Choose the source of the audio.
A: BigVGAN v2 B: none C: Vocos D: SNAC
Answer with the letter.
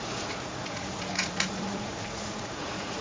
C